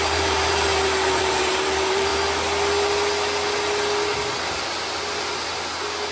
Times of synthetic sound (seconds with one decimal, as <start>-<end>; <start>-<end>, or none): 0.0-0.7; 1.2-2.1